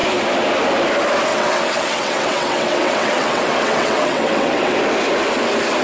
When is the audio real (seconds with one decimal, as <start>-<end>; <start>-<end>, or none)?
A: 0.0-1.3; 4.8-5.8